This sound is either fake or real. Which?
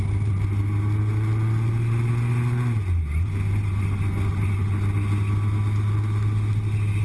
real